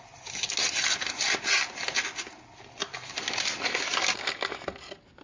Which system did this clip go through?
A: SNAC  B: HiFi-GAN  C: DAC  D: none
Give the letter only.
D